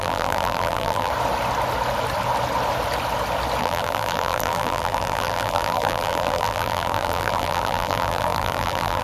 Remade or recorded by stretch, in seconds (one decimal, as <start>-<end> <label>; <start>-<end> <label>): 0.0-1.1 remade; 1.1-3.6 recorded; 3.6-9.0 remade